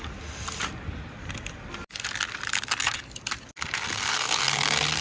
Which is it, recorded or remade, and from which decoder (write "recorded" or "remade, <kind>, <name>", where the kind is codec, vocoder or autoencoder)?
recorded